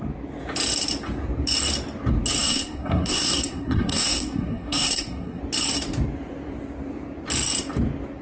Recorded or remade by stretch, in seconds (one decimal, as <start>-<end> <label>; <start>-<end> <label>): 0.0-2.4 recorded; 2.4-5.4 remade; 5.4-8.2 recorded

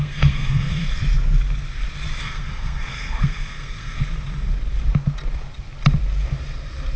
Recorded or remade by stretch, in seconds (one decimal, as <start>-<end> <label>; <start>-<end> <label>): 0.0-1.0 remade; 1.0-2.2 recorded; 2.2-4.0 remade; 4.0-7.0 recorded

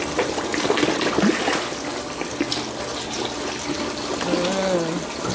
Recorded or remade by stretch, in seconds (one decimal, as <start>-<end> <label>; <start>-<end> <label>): 0.0-5.3 recorded

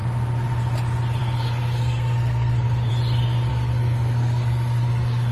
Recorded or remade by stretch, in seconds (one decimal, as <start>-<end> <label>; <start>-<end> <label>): 0.0-1.2 recorded; 1.2-2.9 remade; 2.9-3.5 recorded; 3.5-5.3 remade

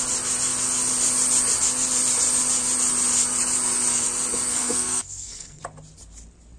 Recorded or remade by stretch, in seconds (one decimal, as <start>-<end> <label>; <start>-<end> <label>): 0.0-4.5 recorded; 4.5-5.6 remade; 5.6-6.6 recorded

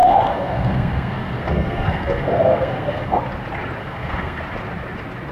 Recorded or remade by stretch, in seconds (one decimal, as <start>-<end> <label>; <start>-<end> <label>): 0.0-3.2 remade; 3.2-3.8 recorded; 3.8-4.4 remade; 4.4-5.3 recorded

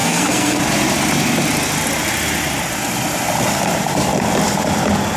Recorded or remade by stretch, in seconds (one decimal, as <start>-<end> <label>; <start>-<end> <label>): 0.0-0.6 remade; 0.6-5.2 recorded

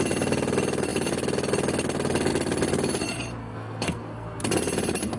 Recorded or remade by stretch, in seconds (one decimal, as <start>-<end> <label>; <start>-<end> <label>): 0.0-3.4 recorded; 3.4-4.4 remade; 4.4-5.2 recorded